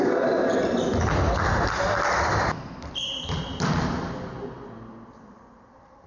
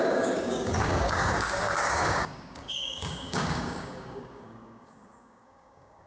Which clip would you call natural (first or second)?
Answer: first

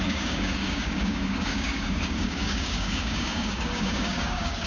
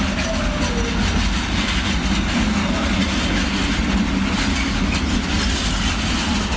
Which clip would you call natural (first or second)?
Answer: second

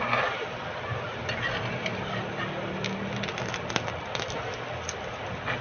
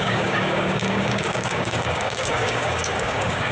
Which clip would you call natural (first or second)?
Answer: first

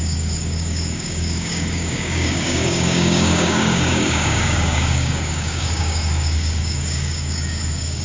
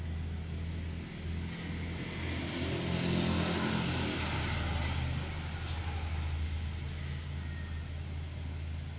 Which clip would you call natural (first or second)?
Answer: second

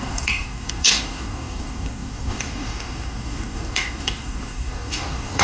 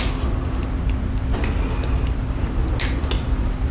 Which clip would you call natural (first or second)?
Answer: second